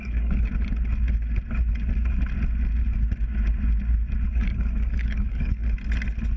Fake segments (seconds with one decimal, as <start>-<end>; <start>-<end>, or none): 0.0-0.5; 4.3-5.6